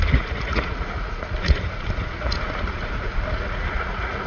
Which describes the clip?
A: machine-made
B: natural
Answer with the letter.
A